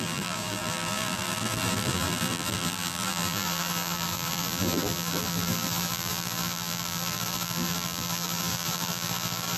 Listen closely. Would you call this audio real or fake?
fake